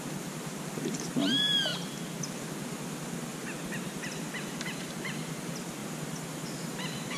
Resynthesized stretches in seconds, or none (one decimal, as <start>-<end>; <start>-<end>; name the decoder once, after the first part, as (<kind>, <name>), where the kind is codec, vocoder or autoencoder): 1.7-2.2 (vocoder, BigVGAN v2); 5.8-7.2